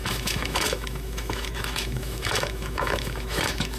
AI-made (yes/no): yes